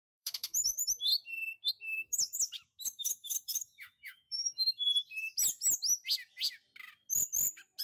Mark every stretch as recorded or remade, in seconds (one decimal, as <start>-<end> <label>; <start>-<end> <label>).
0.0-1.1 remade; 1.1-1.7 recorded; 1.7-4.9 remade; 4.9-7.8 recorded